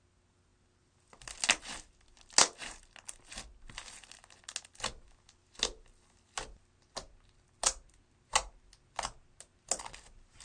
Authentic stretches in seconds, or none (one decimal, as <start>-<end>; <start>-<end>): 0.0-10.4